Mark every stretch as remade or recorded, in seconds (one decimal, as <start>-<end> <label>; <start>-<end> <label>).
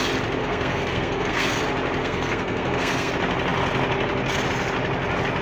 0.0-0.4 recorded; 0.4-1.6 remade; 1.6-2.0 recorded; 2.0-3.1 remade; 3.1-5.4 recorded